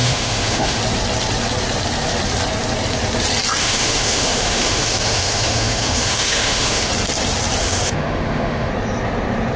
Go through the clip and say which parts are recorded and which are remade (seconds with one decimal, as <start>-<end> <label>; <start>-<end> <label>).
0.0-0.8 remade; 0.8-3.6 recorded; 3.6-6.9 remade; 6.9-7.6 recorded; 7.6-8.7 remade; 8.7-9.6 recorded